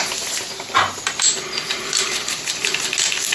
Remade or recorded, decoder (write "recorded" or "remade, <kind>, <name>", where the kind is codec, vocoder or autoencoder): recorded